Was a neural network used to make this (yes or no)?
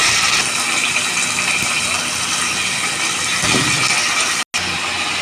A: no